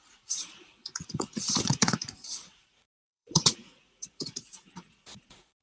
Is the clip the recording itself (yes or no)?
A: no